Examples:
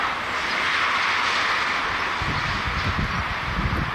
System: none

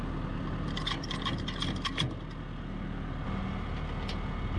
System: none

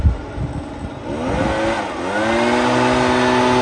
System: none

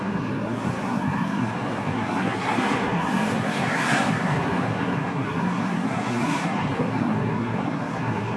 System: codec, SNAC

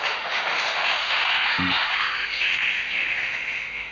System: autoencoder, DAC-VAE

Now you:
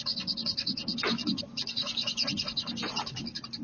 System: none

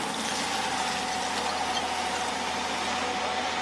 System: none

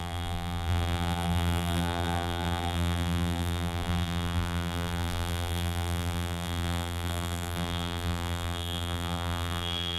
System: vocoder, BigVGAN v2